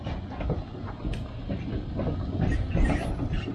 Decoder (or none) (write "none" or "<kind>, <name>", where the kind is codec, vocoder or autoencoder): none